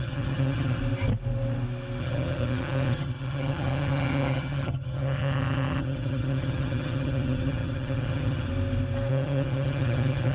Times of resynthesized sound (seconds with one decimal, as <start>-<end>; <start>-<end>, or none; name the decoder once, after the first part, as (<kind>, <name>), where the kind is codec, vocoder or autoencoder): 0.0-0.8 (vocoder, HiFi-GAN); 2.0-8.5; 9.1-10.3